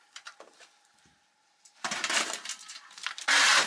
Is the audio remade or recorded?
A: remade